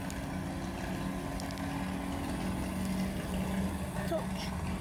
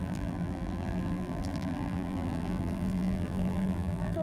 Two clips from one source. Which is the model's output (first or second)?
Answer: second